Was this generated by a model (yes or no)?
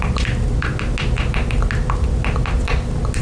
no